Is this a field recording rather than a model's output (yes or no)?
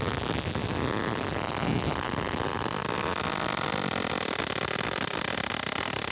yes